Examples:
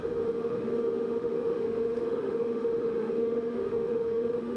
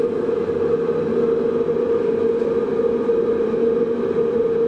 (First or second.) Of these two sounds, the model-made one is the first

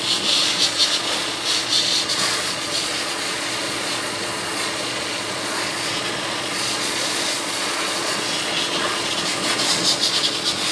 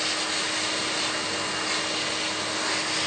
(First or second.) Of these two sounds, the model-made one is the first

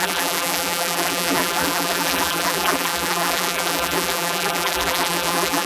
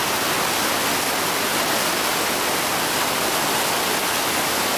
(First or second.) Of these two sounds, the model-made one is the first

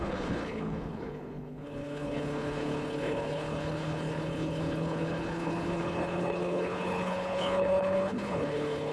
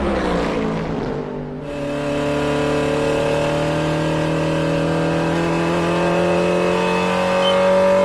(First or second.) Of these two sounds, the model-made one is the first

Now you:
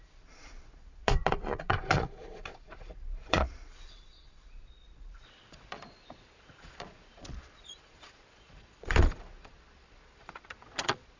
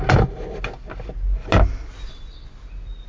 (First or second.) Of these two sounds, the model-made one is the first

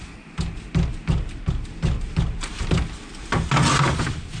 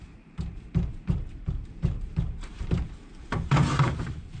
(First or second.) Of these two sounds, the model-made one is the second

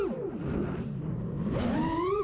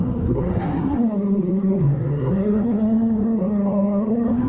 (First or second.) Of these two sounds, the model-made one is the second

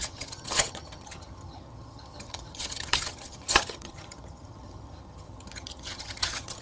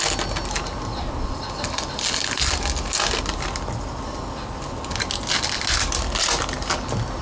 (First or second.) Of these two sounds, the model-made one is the first